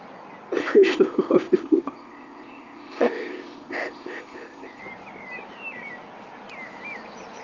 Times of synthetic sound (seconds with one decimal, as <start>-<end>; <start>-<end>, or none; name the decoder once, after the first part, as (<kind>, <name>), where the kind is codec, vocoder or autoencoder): 0.6-4.8 (codec, ZipCodec)